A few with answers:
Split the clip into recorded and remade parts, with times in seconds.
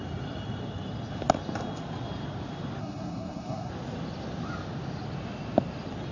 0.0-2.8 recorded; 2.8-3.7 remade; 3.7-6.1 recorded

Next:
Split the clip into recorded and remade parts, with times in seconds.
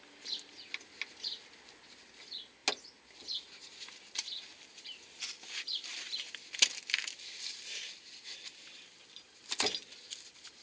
0.0-10.6 recorded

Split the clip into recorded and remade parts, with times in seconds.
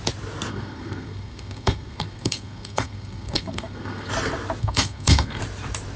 0.0-0.5 recorded; 0.5-4.1 remade; 4.1-4.6 recorded; 4.6-5.4 remade; 5.4-6.0 recorded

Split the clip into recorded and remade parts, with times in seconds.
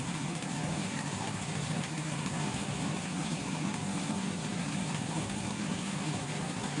0.0-6.8 remade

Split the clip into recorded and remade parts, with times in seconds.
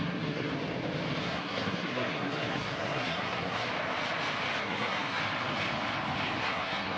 0.0-0.5 remade; 0.5-1.2 recorded; 1.2-3.7 remade; 3.7-4.6 recorded; 4.6-5.2 remade; 5.2-6.4 recorded; 6.4-7.0 remade